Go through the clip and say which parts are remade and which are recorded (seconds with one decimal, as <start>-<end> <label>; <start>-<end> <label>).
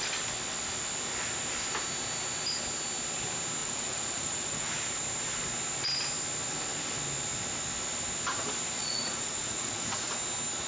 0.0-3.6 recorded; 3.6-4.7 remade; 4.7-8.8 recorded; 8.8-10.1 remade; 10.1-10.7 recorded